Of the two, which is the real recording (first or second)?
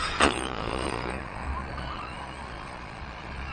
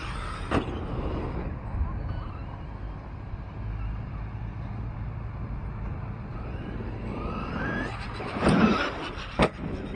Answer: second